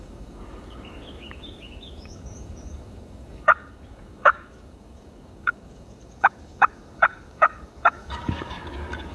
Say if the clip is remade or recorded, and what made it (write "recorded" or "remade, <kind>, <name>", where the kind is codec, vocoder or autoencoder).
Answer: remade, codec, DAC